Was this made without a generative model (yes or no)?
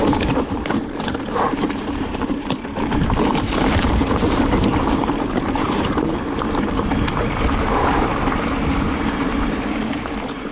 no